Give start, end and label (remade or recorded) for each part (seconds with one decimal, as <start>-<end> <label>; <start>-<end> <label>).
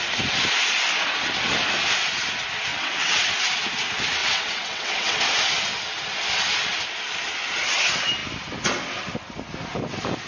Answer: 0.0-2.7 recorded; 2.7-3.3 remade; 3.3-4.2 recorded; 4.2-5.2 remade; 5.2-10.3 recorded